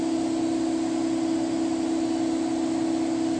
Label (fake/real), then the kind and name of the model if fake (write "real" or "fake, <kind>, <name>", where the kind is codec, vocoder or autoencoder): real